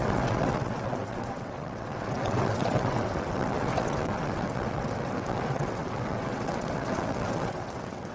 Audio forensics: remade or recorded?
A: remade